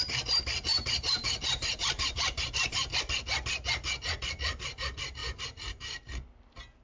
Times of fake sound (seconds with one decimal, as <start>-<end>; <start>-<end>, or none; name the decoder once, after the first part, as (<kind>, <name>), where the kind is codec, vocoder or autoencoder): 0.7-3.0 (vocoder, BigVGAN v2); 5.2-6.1